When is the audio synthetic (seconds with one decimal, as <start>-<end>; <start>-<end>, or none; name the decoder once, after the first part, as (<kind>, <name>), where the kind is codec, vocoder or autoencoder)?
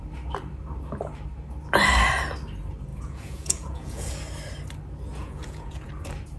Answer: 2.9-4.1 (vocoder, Vocos); 5.2-5.9